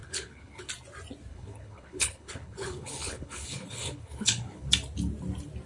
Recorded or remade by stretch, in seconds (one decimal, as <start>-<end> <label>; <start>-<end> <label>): 0.0-0.7 remade; 0.7-1.3 recorded; 1.3-4.7 remade; 4.7-5.7 recorded

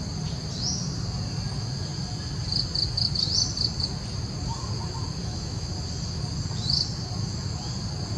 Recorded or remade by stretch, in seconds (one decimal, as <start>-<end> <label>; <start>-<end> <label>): 0.0-5.2 recorded; 5.2-5.7 remade; 5.7-8.2 recorded